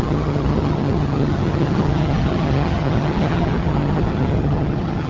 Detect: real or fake fake